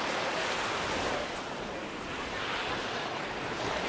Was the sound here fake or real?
real